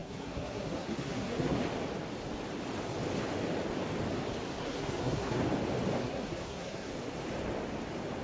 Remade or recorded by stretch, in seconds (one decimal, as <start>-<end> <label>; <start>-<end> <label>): 0.0-1.6 remade; 1.6-4.6 recorded; 4.6-5.4 remade; 5.4-6.0 recorded; 6.0-6.9 remade; 6.9-8.2 recorded